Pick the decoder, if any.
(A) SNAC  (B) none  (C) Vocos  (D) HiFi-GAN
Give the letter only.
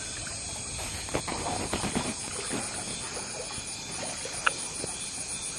B